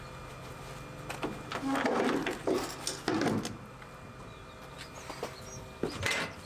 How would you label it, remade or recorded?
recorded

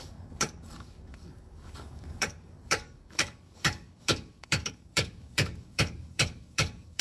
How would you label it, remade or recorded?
remade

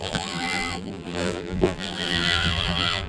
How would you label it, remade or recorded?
remade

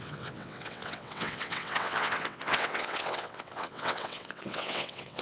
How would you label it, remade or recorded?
remade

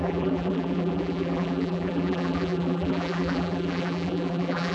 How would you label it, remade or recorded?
remade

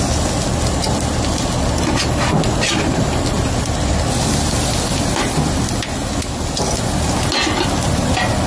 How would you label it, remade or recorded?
recorded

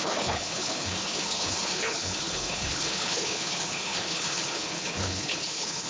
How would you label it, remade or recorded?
remade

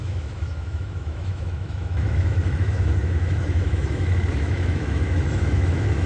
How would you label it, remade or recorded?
remade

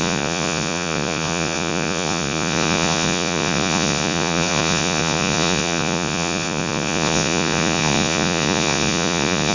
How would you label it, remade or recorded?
remade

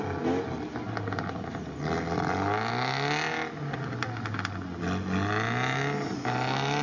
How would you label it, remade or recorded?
recorded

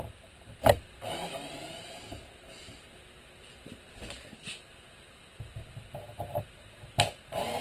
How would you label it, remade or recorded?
recorded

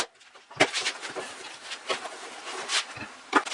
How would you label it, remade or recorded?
recorded